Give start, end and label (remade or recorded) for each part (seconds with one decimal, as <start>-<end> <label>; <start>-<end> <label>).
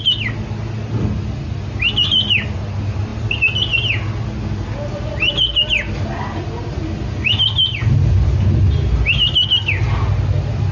0.0-10.7 recorded